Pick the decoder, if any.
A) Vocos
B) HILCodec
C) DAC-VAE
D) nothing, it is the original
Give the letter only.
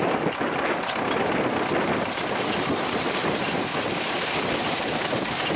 D